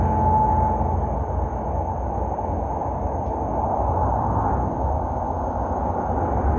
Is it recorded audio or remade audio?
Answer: recorded